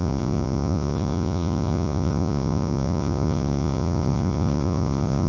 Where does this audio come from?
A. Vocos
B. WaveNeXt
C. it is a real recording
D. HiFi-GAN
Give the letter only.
A